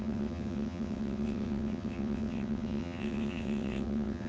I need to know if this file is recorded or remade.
remade